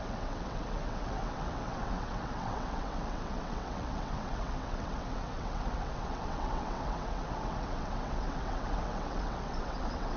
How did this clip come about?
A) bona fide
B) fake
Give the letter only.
B